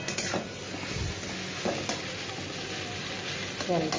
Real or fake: real